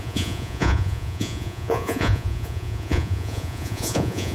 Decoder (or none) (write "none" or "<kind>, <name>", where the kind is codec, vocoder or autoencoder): vocoder, Vocos